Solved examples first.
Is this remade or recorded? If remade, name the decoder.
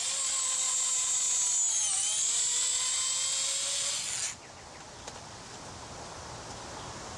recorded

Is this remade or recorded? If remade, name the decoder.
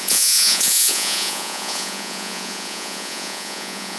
remade, vocoder, Vocos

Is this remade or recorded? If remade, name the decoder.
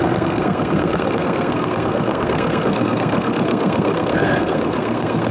remade, codec, SNAC